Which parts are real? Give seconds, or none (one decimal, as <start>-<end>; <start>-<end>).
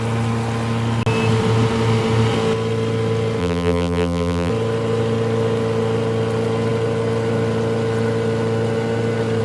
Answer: 0.0-3.4; 4.5-9.4